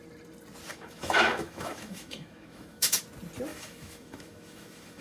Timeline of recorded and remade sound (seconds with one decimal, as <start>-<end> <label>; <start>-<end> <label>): 0.0-0.7 recorded; 0.7-3.0 remade; 3.0-3.5 recorded; 3.5-5.0 remade